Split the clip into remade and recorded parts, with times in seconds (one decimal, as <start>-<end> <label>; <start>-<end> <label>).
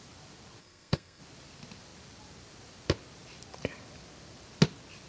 0.0-0.6 recorded; 0.6-1.2 remade; 1.2-5.1 recorded